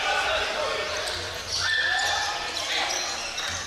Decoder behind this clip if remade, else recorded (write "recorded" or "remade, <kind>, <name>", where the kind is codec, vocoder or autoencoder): recorded